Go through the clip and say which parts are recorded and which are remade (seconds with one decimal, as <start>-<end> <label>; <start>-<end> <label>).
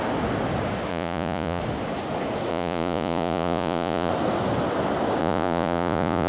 0.0-0.9 recorded; 0.9-1.6 remade; 1.6-2.5 recorded; 2.5-4.1 remade; 4.1-5.2 recorded; 5.2-6.3 remade